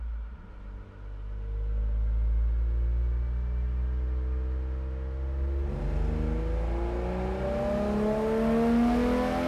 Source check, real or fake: real